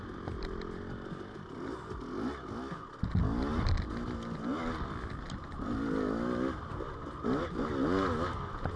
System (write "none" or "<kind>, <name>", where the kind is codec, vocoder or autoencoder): none